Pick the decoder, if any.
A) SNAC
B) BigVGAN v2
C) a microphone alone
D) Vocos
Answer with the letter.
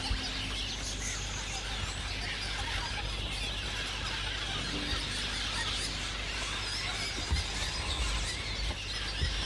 C